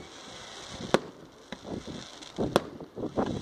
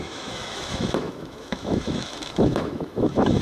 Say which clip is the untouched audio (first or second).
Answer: first